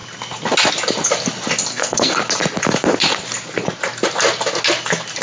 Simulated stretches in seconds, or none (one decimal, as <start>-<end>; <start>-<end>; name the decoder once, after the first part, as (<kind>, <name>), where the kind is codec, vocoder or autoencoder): 1.7-2.2 (codec, SNAC)